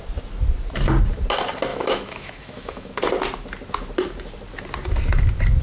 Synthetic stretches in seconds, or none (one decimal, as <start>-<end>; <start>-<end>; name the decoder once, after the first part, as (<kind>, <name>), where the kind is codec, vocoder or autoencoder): 1.7-2.9 (autoencoder, DAC-VAE)